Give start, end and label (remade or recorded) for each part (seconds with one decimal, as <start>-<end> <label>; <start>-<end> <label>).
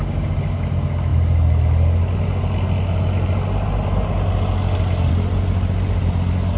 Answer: 0.0-6.6 recorded